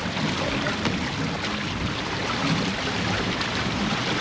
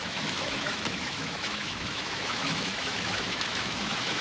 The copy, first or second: second